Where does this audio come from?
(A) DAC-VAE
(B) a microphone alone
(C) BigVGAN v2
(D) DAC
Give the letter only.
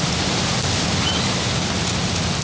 B